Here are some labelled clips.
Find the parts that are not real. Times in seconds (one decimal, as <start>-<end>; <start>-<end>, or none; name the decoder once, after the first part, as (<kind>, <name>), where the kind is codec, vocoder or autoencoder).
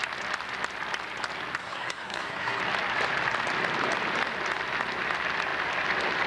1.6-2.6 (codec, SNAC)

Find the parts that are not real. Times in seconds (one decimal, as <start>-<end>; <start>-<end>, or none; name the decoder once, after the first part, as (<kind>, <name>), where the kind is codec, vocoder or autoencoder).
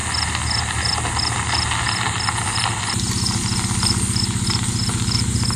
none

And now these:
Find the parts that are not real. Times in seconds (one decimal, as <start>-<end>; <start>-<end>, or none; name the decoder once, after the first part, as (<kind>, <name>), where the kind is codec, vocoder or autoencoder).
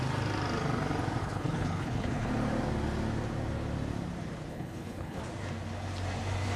1.2-2.3 (codec, HILCodec); 4.5-5.2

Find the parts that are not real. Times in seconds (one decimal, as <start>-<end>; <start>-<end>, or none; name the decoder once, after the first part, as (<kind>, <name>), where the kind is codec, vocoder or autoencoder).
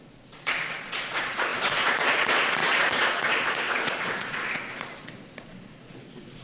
0.0-6.4 (vocoder, Vocos)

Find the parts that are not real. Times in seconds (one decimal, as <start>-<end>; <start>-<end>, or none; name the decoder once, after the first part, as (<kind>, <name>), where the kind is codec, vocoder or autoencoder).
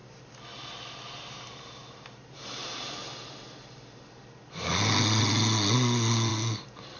none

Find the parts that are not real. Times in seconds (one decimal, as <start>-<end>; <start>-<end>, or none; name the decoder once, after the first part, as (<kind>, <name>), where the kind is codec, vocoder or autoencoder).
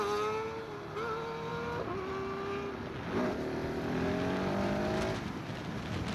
none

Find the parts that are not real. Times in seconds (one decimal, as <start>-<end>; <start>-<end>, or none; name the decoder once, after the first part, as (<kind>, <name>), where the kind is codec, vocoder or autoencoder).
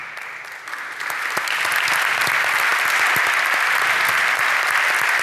2.1-2.7 (vocoder, BigVGAN v2); 4.4-5.2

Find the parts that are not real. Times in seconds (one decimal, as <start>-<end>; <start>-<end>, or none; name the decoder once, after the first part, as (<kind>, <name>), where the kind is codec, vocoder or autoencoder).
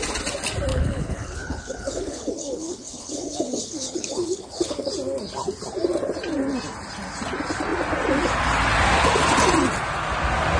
0.7-4.9 (codec, HILCodec)